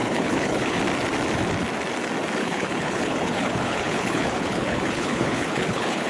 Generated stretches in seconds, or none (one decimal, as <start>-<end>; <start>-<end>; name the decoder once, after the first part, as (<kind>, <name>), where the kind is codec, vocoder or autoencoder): 0.0-0.8 (codec, HILCodec); 2.4-6.1

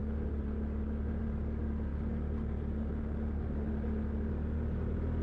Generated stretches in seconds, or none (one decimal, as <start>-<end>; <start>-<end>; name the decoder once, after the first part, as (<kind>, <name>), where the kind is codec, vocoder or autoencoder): none

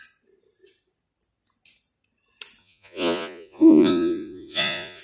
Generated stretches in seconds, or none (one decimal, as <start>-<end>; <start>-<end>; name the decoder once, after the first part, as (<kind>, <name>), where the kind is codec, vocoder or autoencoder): 2.6-5.0 (vocoder, Vocos)

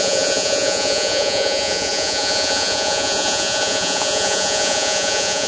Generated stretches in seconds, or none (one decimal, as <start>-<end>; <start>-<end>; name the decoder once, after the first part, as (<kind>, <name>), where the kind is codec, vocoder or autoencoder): 0.0-5.5 (vocoder, Vocos)

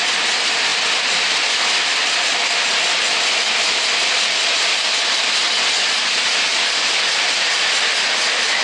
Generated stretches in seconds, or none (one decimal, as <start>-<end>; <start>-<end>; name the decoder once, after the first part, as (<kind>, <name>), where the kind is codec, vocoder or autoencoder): 0.0-2.4 (vocoder, BigVGAN v2); 3.9-5.4; 6.5-8.6

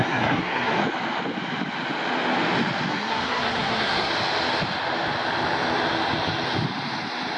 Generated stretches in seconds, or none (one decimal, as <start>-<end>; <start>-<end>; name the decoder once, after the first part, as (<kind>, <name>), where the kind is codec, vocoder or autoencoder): 0.0-0.8 (codec, SNAC); 2.9-4.1

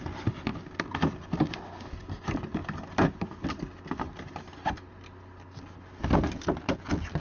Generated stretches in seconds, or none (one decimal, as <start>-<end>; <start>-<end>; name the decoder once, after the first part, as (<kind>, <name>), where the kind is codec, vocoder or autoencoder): none